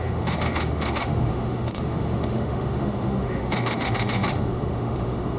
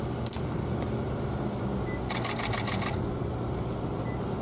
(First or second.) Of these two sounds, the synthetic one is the first